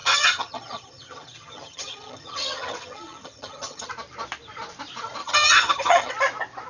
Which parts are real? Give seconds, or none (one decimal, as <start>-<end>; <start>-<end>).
3.9-5.2; 6.1-6.7